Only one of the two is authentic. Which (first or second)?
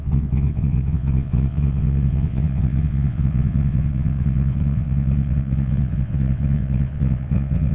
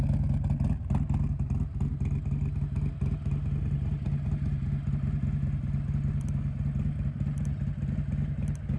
second